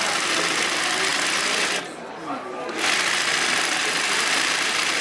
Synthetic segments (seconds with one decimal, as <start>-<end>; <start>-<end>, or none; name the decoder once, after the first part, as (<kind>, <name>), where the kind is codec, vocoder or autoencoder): 3.8-5.0 (vocoder, BigVGAN v2)